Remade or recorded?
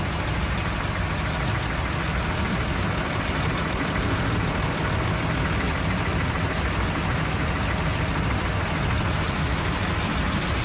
recorded